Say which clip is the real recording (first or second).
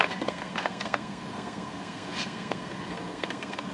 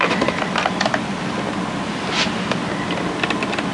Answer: second